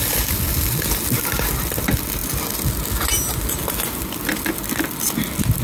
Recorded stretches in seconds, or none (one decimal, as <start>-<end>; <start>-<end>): 0.0-5.6